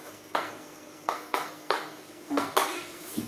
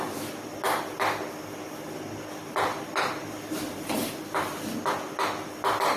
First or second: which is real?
second